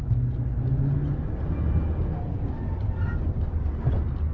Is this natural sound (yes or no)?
yes